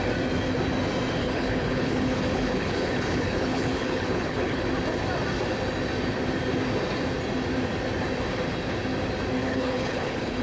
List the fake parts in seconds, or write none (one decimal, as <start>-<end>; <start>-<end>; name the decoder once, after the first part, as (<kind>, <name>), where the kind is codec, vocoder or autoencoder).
1.2-4.7 (codec, HILCodec); 9.4-10.4

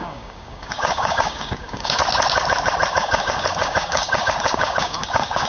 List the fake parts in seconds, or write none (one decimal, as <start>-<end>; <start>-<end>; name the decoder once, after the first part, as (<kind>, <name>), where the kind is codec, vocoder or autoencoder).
0.0-2.0 (codec, DAC); 2.9-5.5